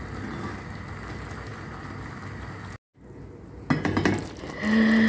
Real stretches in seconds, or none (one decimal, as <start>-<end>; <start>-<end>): 0.0-5.1